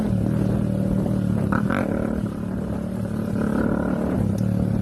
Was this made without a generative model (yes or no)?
yes